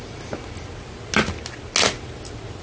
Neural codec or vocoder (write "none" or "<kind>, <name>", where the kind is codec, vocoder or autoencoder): none